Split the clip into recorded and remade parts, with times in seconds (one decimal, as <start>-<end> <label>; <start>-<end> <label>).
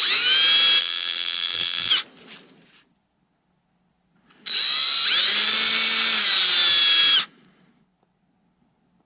0.0-0.8 recorded; 0.8-1.9 remade; 1.9-9.1 recorded